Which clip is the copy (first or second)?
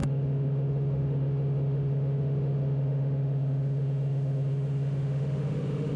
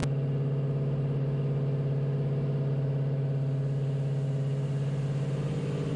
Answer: first